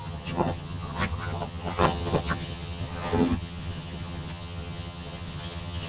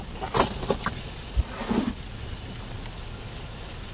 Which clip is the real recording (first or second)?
second